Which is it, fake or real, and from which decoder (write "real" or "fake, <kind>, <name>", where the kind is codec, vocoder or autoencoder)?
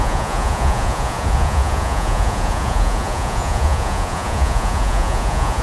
fake, vocoder, Vocos